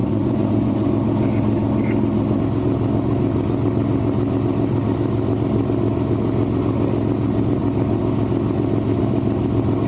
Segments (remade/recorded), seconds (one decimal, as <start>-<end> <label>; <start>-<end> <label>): 0.0-0.9 remade; 0.9-9.9 recorded